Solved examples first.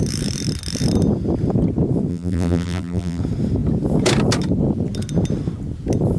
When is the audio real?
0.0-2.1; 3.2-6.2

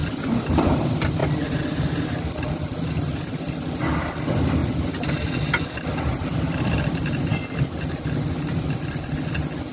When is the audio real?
0.0-0.6; 1.2-2.3; 7.3-9.7

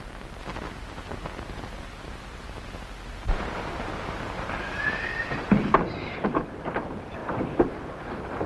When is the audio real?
0.0-8.5

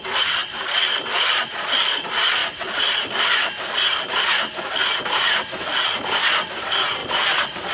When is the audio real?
0.0-7.7

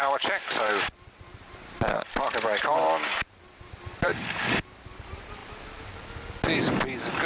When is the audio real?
2.8-3.7; 5.4-7.3

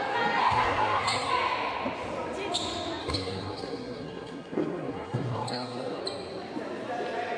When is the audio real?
0.0-0.4; 1.3-3.0; 6.0-7.4